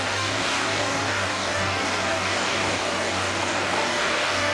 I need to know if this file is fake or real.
fake